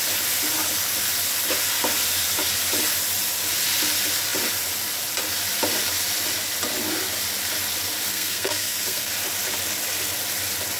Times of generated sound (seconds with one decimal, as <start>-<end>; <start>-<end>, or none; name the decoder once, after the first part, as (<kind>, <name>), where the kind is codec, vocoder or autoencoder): 8.1-9.1 (codec, SNAC)